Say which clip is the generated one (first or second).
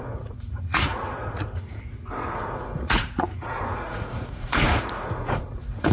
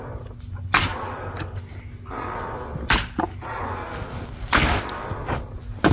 first